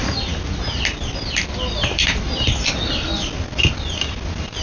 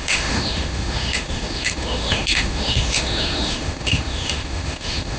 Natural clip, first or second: first